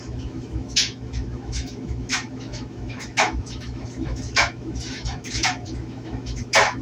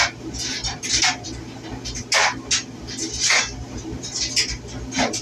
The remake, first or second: first